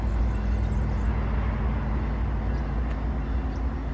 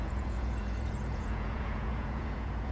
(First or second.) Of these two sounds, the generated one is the second